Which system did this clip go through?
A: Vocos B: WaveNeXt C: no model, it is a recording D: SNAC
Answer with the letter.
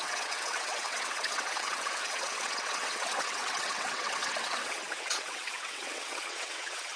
B